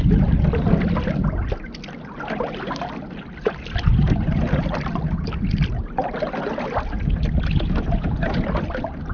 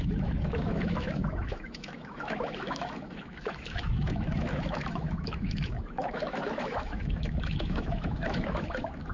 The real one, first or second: first